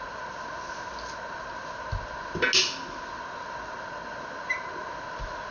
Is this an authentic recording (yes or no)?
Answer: yes